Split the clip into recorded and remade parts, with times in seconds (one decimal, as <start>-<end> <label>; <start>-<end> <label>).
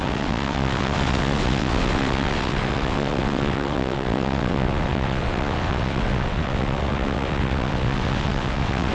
0.0-8.9 remade